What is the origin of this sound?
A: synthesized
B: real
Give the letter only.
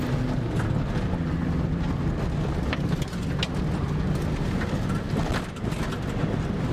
B